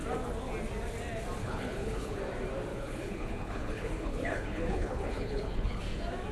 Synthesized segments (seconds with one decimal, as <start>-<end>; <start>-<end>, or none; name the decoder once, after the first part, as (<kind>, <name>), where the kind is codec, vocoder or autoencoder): 1.4-2.2 (codec, HILCodec); 2.7-5.8